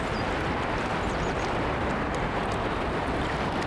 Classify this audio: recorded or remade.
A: recorded